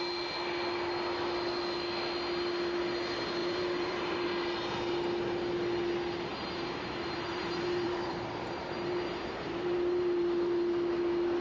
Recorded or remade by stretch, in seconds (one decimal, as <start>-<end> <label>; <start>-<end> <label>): 0.0-3.4 recorded; 3.4-4.3 remade; 4.3-6.3 recorded; 6.3-10.3 remade; 10.3-11.4 recorded